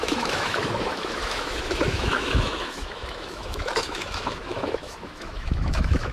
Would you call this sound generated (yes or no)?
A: yes